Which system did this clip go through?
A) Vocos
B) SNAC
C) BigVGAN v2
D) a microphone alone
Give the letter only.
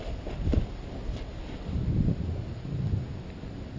D